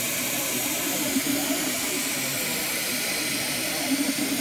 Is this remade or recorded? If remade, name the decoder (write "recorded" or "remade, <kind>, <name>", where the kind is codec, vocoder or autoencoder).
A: remade, vocoder, BigVGAN v2